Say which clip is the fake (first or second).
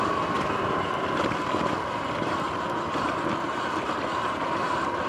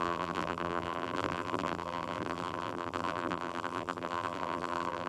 second